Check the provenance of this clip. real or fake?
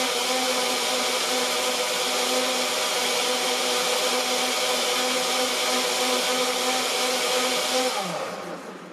real